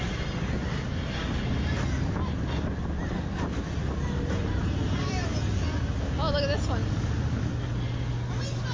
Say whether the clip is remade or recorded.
recorded